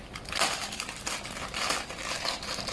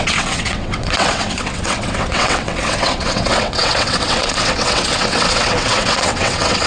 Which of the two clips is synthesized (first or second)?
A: second